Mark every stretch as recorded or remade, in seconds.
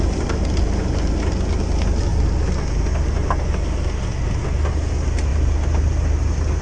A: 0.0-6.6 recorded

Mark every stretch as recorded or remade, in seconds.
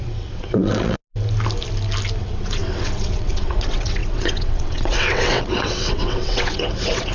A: 0.0-1.0 remade; 1.0-2.2 recorded; 2.2-7.1 remade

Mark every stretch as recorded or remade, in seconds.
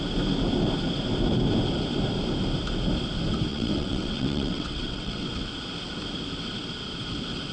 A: 0.0-3.5 recorded; 3.5-5.3 remade; 5.3-7.5 recorded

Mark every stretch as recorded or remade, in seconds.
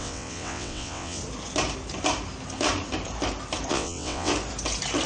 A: 0.0-1.2 remade; 1.2-3.7 recorded; 3.7-4.3 remade; 4.3-5.1 recorded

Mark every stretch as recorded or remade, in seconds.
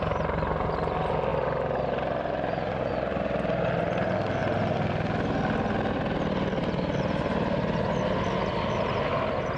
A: 0.0-9.6 recorded